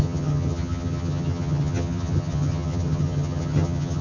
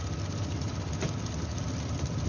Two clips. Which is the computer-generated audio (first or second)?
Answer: first